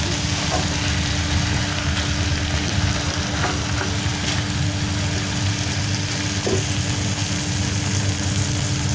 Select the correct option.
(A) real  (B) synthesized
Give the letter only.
A